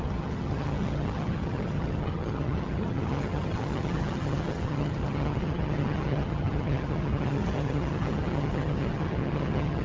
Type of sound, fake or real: fake